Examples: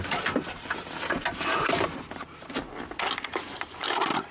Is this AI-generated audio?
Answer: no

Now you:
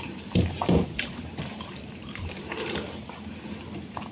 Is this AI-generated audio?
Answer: no